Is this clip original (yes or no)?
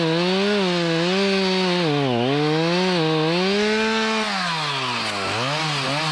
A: yes